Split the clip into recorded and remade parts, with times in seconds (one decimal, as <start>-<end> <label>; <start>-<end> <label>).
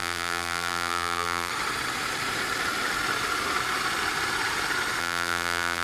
0.0-1.5 remade; 1.5-5.0 recorded; 5.0-5.8 remade